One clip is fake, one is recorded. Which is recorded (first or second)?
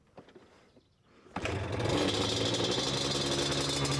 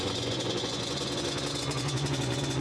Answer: first